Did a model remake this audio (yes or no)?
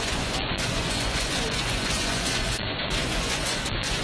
yes